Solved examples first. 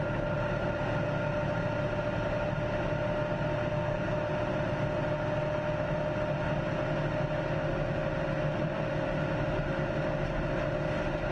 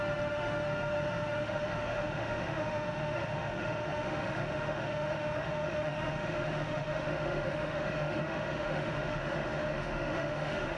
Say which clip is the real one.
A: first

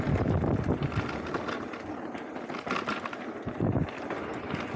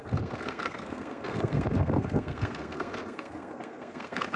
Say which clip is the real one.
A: first